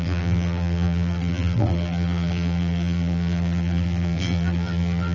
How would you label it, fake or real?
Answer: fake